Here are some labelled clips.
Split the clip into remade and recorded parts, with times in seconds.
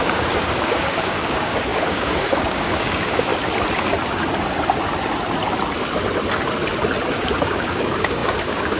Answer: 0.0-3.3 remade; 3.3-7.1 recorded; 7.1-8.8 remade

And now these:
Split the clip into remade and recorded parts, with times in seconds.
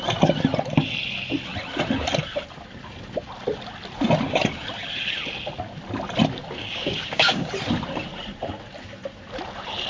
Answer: 0.0-6.6 recorded; 6.6-7.5 remade; 7.5-9.9 recorded